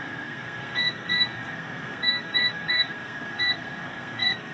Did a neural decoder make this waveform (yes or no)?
yes